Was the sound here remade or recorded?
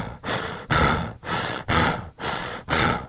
remade